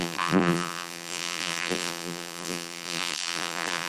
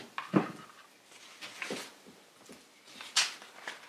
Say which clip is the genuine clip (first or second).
second